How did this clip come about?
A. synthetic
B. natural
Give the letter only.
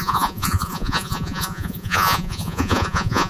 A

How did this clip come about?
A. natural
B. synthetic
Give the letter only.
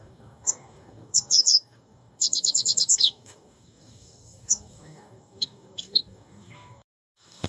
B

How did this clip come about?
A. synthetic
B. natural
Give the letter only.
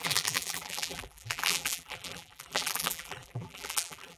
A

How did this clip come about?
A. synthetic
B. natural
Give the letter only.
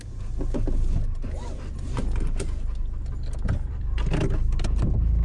B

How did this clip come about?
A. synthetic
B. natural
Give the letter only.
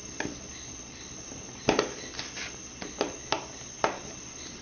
B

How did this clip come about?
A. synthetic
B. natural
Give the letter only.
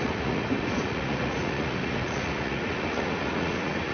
A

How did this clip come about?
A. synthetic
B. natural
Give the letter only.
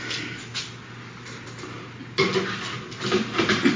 B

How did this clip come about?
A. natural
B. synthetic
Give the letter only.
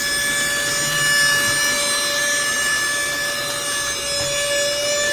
A